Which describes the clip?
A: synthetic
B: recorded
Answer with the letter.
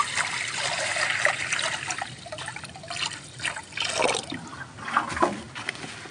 B